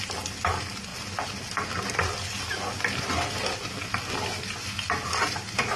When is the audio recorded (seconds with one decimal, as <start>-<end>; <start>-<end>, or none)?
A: 0.0-5.8